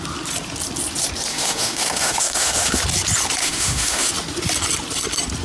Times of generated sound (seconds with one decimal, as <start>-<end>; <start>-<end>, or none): 1.3-2.8; 3.4-4.1